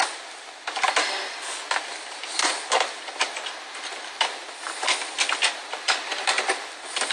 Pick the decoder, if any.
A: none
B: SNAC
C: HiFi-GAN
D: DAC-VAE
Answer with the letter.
A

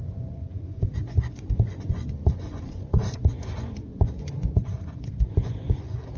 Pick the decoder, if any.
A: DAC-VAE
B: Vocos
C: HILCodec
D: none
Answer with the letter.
B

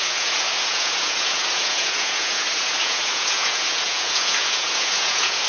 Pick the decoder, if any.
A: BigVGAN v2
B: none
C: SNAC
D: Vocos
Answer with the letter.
D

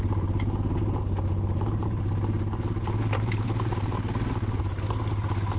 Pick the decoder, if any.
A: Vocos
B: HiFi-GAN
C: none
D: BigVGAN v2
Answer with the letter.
C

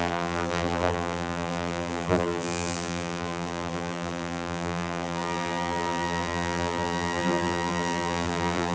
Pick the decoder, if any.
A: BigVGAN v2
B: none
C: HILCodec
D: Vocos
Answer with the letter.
A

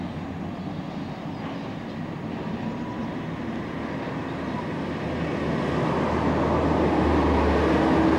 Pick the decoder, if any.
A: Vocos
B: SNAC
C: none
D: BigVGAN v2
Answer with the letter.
C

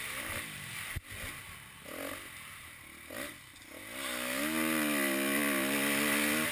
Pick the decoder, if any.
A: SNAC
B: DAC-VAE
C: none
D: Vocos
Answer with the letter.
C